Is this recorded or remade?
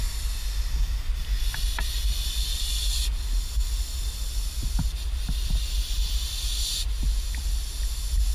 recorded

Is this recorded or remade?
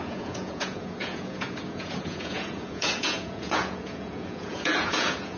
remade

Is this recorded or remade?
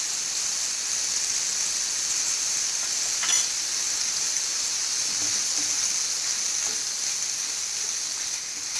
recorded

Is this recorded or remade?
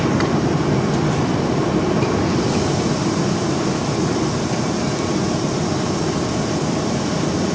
recorded